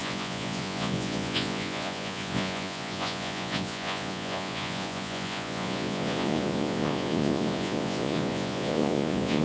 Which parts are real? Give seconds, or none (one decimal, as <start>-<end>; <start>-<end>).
none